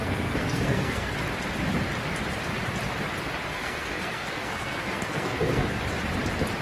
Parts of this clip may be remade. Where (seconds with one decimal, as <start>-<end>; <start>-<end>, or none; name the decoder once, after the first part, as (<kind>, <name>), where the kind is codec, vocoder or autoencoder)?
0.0-1.1 (codec, SNAC); 3.5-5.8